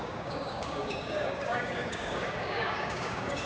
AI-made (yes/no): yes